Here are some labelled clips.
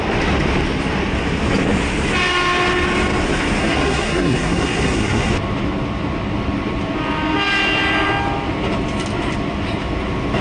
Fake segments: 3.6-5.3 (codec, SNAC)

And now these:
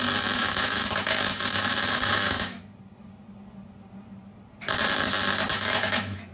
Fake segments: 0.4-2.6 (autoencoder, DAC-VAE); 5.5-6.3

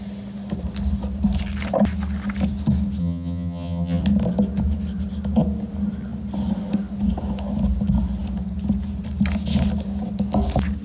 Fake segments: 3.0-4.0 (vocoder, HiFi-GAN)